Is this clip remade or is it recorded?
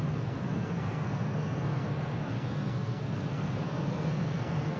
remade